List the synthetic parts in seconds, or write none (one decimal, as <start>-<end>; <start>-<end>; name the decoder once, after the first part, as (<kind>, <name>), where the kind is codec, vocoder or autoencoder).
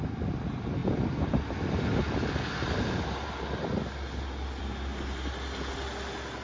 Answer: none